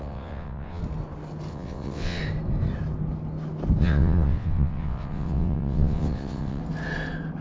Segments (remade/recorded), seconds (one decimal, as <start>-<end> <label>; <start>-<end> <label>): 0.0-0.8 remade; 0.8-1.5 recorded; 1.5-2.2 remade; 2.2-3.8 recorded; 3.8-6.6 remade; 6.6-7.4 recorded